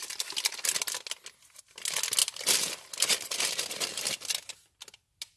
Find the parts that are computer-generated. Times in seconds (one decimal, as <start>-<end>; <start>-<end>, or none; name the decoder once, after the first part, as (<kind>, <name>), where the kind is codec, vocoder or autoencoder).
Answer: none